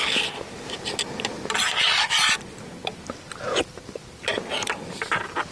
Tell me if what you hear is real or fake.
real